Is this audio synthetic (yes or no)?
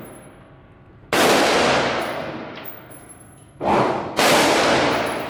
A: no